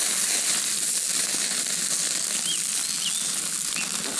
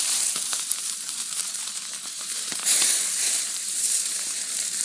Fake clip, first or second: second